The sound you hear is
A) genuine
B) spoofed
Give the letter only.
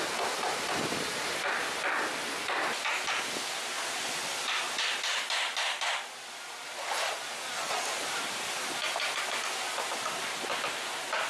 A